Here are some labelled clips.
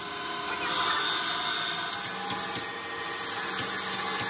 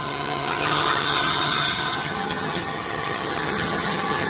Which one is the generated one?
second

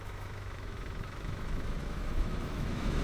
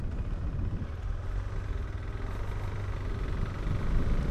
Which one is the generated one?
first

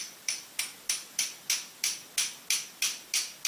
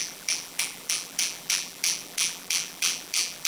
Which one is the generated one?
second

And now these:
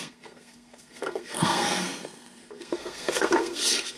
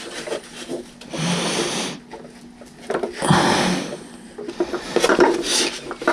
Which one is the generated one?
first